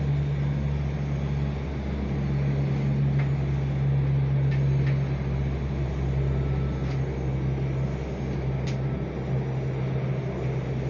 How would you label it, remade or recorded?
recorded